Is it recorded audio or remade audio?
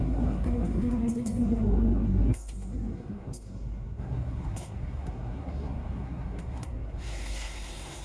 remade